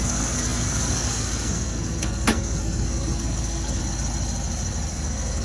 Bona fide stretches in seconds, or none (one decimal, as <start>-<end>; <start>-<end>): 3.8-4.9